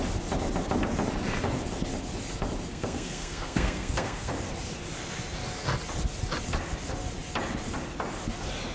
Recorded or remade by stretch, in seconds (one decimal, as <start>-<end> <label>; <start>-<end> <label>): 0.0-2.7 recorded; 2.7-4.3 remade; 4.3-8.7 recorded